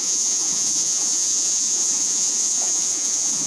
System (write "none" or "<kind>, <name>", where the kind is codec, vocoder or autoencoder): vocoder, Vocos